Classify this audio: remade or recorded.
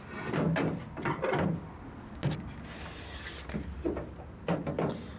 recorded